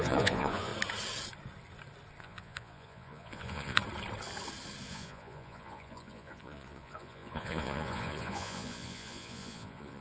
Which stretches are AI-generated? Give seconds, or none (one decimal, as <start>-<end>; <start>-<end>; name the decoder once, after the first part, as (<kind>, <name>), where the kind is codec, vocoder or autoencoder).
0.0-0.7 (vocoder, Vocos); 2.2-3.8; 4.9-10.0